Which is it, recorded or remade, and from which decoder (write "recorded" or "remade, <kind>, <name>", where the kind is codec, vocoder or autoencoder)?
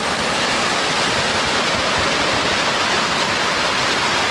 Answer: recorded